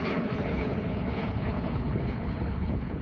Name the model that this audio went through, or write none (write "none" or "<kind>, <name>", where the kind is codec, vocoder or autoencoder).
codec, HILCodec